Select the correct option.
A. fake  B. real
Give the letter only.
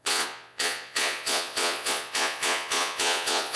A